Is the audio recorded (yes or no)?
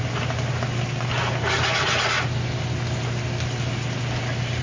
yes